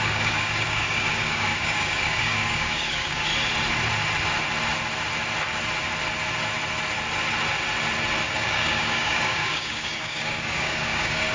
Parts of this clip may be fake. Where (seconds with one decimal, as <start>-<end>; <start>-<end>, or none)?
0.0-3.3; 8.2-11.3